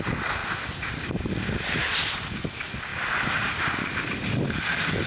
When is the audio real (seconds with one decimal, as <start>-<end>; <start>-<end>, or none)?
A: 0.0-5.1